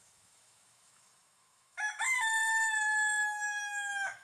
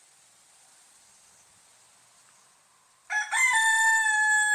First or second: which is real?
second